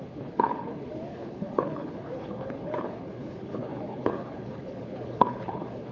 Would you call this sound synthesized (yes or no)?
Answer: yes